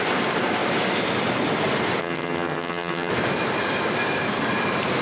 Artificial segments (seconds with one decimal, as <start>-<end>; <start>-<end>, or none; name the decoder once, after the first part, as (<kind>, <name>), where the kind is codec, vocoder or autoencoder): 2.0-3.1 (vocoder, HiFi-GAN)